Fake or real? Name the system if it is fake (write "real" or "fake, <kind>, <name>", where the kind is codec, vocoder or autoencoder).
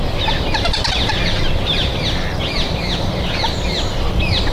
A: real